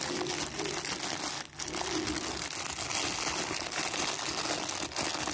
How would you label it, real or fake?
real